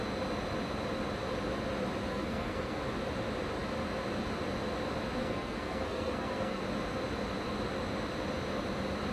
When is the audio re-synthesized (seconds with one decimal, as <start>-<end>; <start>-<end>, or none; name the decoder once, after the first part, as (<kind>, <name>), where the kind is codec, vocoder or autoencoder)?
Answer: 2.0-2.8 (codec, SNAC); 5.2-6.6